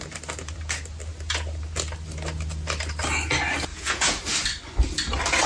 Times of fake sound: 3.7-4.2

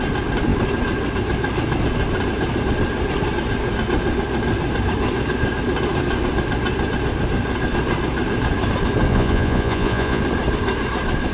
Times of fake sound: 9.1-10.2

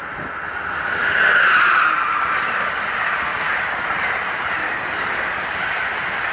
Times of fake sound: none

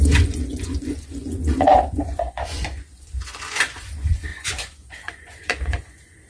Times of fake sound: 0.0-6.3